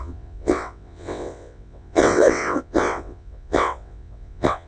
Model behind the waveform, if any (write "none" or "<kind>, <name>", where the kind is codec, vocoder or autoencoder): vocoder, WaveNeXt